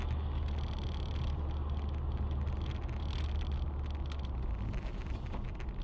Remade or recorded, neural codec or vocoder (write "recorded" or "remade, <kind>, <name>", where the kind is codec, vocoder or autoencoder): recorded